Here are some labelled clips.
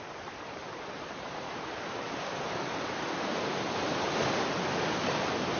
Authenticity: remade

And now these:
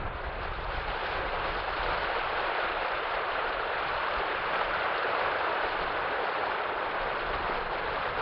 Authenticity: remade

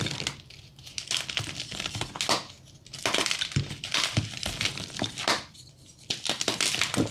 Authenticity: recorded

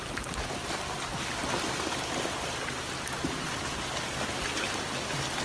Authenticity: recorded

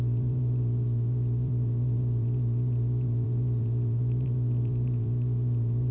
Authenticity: remade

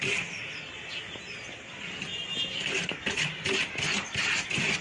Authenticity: recorded